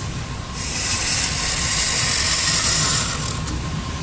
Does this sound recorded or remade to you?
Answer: recorded